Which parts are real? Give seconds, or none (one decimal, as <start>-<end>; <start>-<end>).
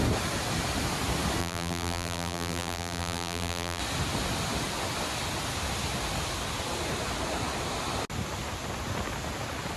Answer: 0.0-1.4; 3.8-9.8